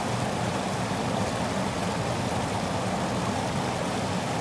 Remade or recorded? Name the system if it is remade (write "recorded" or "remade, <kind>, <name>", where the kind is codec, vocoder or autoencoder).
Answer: recorded